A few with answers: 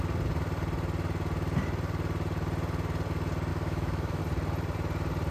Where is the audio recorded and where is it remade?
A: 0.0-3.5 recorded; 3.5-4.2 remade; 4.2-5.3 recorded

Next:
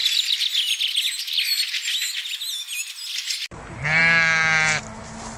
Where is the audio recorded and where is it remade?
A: 0.0-5.4 recorded

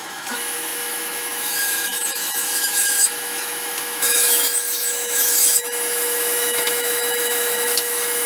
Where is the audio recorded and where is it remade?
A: 0.0-8.3 remade

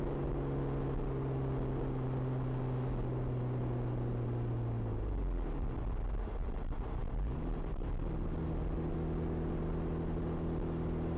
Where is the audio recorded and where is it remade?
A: 0.0-11.2 recorded